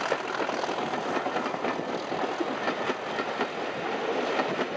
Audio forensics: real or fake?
real